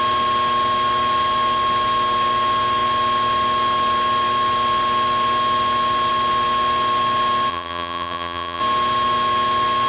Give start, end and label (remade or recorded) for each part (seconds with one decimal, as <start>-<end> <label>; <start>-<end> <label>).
0.0-7.5 recorded; 7.5-8.6 remade; 8.6-9.9 recorded